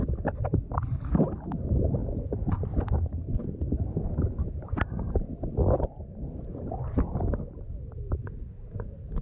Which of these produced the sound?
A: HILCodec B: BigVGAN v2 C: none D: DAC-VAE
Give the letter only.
C